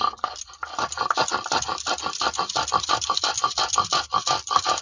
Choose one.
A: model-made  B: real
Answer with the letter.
B